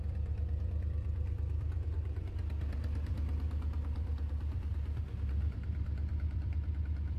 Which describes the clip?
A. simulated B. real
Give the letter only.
A